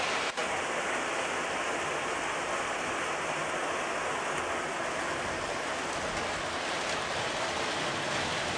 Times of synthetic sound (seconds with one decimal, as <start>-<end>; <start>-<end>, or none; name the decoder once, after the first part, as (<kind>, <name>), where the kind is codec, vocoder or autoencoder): none